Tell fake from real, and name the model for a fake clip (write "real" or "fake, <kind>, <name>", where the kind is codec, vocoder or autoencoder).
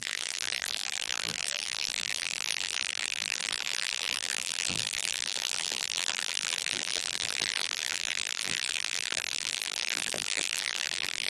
fake, vocoder, BigVGAN v2